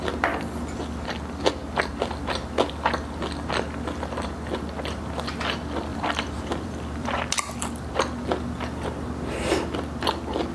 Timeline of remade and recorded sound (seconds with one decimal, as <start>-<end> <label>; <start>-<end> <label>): 0.0-5.9 recorded; 5.9-7.2 remade; 7.2-10.5 recorded